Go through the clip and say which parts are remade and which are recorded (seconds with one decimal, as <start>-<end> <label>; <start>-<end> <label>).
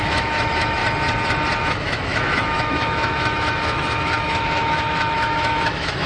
0.0-0.8 remade; 0.8-1.6 recorded; 1.6-6.1 remade